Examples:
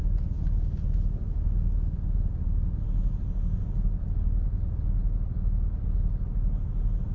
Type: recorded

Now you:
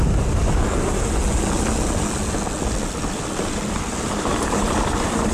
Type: recorded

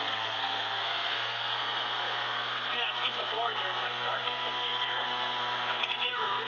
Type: remade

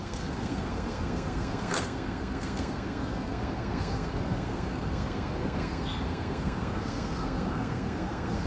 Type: remade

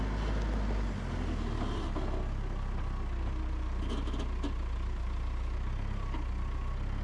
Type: recorded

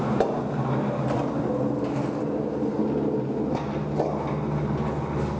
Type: recorded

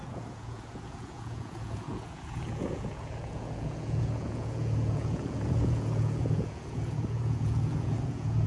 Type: remade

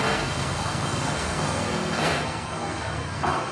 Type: remade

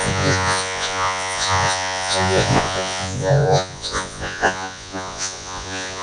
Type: remade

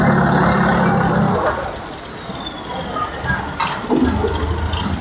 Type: recorded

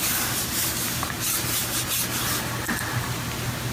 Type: recorded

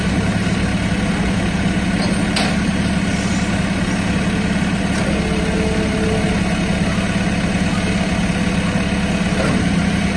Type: recorded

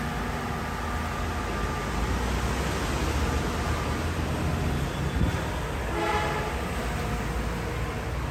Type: recorded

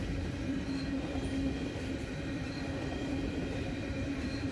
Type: remade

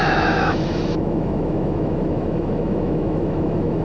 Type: remade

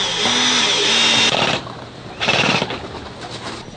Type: recorded